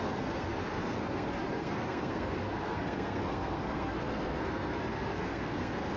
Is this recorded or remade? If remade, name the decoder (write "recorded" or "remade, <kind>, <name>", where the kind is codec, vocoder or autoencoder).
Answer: remade, codec, SNAC